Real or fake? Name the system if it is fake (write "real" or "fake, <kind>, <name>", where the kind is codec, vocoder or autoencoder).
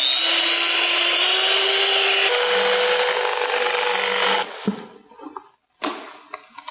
real